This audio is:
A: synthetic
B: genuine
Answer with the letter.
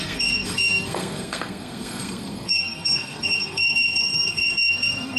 A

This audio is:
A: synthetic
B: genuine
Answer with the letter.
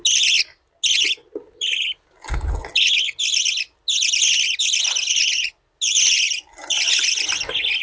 B